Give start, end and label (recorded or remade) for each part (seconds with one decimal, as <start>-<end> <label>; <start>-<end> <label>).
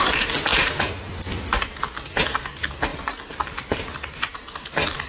0.0-5.1 recorded